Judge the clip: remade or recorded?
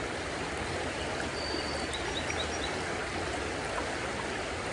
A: recorded